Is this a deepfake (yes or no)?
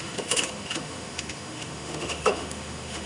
yes